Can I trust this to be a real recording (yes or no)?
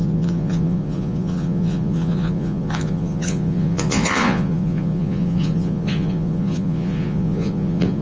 no